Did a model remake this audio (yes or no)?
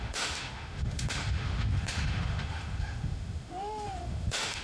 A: yes